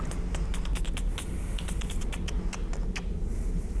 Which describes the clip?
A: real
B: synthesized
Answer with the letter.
A